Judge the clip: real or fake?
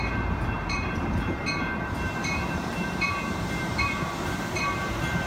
fake